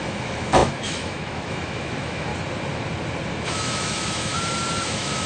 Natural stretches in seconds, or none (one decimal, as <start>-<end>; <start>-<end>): 2.3-3.4; 4.3-4.8